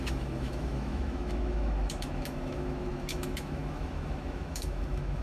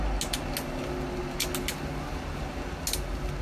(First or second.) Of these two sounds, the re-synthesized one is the first